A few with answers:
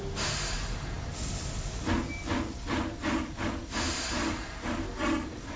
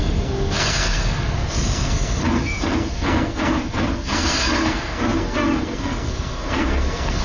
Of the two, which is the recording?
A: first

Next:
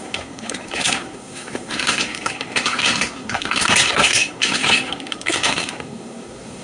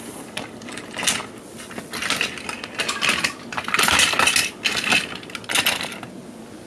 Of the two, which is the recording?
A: second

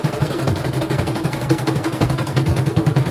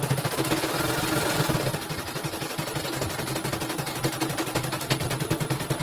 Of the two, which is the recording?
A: second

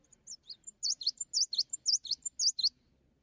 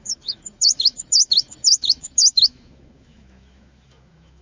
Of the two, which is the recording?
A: first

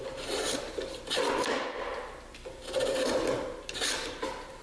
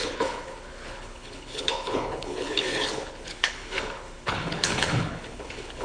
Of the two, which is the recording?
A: first